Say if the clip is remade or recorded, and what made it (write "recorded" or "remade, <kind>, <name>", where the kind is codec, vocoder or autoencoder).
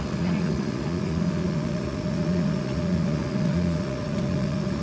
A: remade, vocoder, Vocos